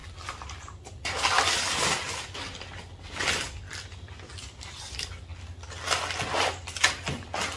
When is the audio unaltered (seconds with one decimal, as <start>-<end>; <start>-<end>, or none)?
0.0-7.6